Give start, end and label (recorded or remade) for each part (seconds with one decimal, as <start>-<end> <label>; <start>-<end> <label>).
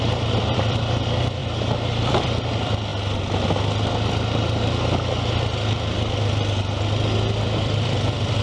0.0-2.9 remade; 2.9-7.4 recorded; 7.4-8.4 remade